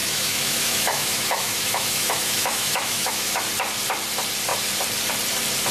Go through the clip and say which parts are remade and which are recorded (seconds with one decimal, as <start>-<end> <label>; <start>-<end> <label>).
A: 0.0-3.4 remade; 3.4-5.7 recorded